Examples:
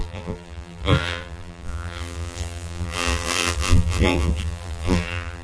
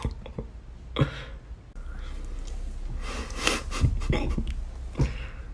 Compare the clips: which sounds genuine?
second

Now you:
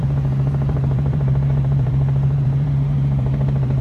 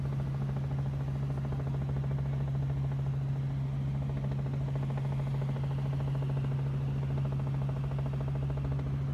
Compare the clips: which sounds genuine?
second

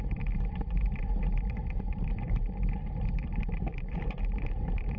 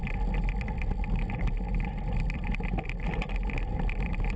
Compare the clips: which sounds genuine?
second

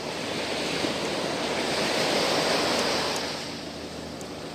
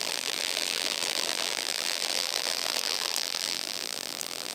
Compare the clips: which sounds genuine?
first